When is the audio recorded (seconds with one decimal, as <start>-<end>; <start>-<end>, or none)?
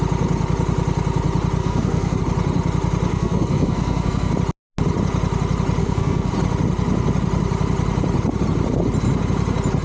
0.0-1.6; 2.2-3.1; 4.3-5.8; 6.3-9.8